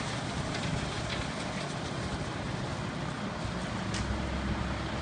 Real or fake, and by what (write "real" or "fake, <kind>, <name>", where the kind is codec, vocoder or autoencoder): real